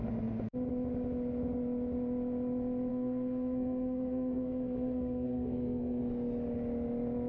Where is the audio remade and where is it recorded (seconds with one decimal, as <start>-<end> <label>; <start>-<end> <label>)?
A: 0.0-2.9 recorded; 2.9-6.0 remade; 6.0-7.3 recorded